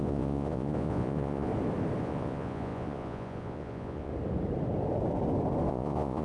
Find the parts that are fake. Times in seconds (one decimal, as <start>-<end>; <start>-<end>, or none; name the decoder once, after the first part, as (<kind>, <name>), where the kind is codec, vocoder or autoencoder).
0.0-1.5 (vocoder, Vocos); 2.0-4.1; 5.7-6.2